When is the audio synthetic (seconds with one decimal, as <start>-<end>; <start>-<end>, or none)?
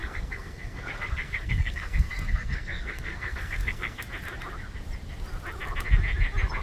0.0-4.0